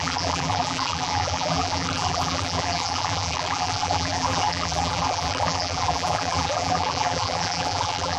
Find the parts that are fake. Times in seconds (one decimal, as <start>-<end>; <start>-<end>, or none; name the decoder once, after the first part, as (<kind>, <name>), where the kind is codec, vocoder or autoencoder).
0.0-8.2 (vocoder, BigVGAN v2)